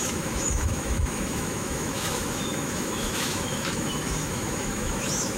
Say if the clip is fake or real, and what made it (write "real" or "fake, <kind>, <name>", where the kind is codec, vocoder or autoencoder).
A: fake, autoencoder, DAC-VAE